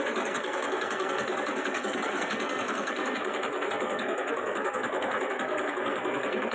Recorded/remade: remade